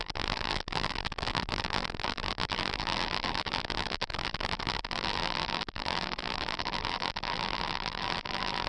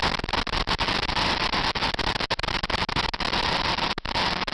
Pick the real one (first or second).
second